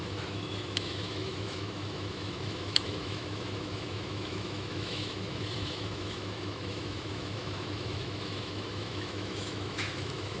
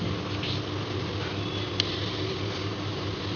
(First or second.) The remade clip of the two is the first